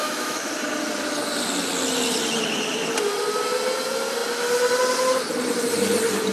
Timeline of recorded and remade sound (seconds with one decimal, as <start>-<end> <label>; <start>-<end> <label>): 0.0-0.5 remade; 0.5-6.3 recorded